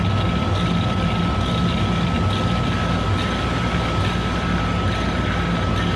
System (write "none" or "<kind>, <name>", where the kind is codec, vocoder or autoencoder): none